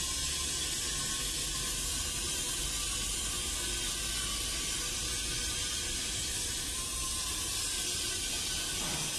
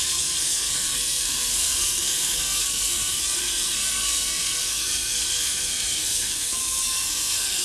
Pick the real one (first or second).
first